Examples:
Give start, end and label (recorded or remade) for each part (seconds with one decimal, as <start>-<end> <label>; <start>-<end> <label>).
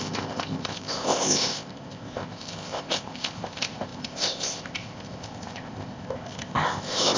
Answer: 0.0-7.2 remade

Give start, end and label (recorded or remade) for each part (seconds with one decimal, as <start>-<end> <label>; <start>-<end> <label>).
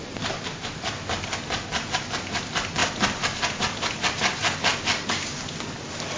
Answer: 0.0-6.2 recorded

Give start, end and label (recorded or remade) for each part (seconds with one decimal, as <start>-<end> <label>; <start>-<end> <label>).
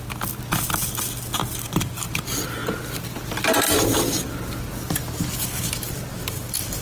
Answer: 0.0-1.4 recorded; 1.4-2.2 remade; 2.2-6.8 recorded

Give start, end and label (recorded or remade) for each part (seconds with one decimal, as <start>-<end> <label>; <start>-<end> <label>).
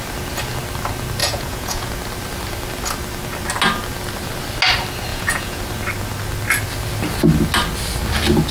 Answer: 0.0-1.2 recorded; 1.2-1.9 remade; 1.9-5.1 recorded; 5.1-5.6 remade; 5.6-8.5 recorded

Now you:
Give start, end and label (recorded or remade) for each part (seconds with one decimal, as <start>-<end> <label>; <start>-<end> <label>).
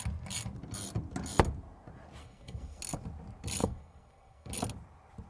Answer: 0.0-2.2 recorded; 2.2-2.8 remade; 2.8-3.6 recorded; 3.6-4.5 remade; 4.5-5.3 recorded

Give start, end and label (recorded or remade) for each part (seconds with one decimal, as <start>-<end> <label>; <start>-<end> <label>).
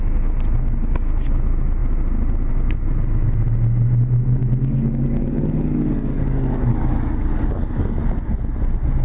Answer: 0.0-4.4 recorded; 4.4-8.2 remade; 8.2-9.0 recorded